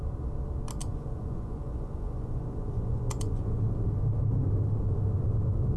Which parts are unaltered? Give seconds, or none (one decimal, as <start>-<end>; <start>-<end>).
0.0-0.8; 3.6-5.8